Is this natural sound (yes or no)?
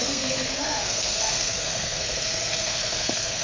no